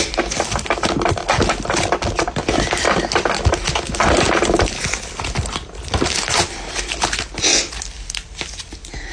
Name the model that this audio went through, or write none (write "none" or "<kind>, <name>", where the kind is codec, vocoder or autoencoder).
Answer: none